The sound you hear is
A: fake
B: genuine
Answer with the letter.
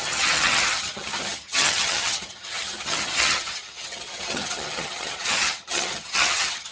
A